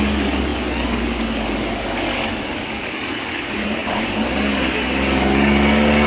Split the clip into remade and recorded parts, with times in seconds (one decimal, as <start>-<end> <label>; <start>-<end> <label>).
0.0-6.1 remade